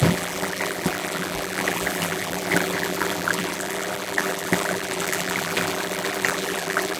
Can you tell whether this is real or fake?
fake